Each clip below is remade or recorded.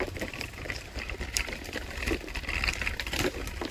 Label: remade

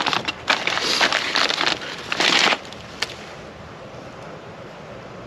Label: recorded